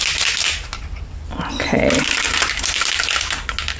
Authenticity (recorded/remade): recorded